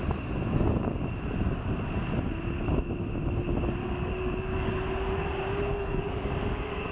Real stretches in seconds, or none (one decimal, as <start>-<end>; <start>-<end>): 0.0-3.8; 4.7-5.7